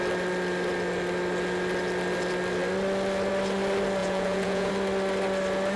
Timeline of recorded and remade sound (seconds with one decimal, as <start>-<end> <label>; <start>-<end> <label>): 0.0-4.0 recorded; 4.0-4.7 remade; 4.7-5.8 recorded